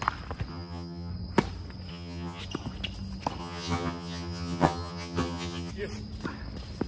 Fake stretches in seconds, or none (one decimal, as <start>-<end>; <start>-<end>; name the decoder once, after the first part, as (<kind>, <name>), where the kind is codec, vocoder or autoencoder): 0.5-1.1 (vocoder, HiFi-GAN); 1.9-2.4; 3.4-5.7